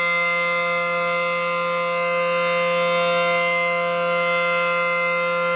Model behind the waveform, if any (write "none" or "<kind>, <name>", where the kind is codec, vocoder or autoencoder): none